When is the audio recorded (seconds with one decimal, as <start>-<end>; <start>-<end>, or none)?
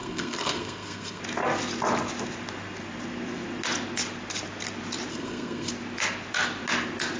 1.2-5.1; 5.7-7.2